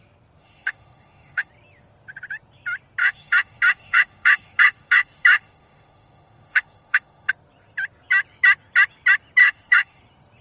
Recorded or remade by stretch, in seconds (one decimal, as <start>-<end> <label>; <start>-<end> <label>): 0.0-0.4 recorded; 0.4-1.5 remade; 1.5-3.0 recorded; 3.0-7.3 remade; 7.3-9.4 recorded; 9.4-10.0 remade; 10.0-10.4 recorded